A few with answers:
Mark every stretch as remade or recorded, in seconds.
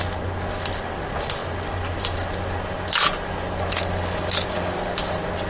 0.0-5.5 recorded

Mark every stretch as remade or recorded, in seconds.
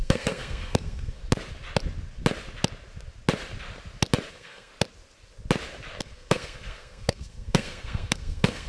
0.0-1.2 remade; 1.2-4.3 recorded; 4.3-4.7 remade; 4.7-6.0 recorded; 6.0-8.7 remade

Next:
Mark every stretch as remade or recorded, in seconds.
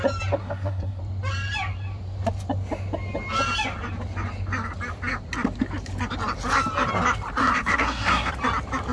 0.0-0.4 recorded; 0.4-1.0 remade; 1.0-7.4 recorded; 7.4-8.3 remade; 8.3-8.9 recorded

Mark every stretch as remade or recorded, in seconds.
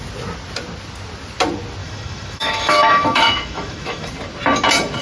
0.0-1.8 recorded; 1.8-4.1 remade; 4.1-5.0 recorded